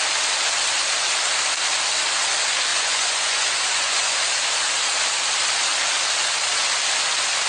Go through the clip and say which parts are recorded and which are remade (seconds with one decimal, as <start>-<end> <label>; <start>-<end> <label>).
0.0-2.7 recorded; 2.7-4.2 remade; 4.2-7.5 recorded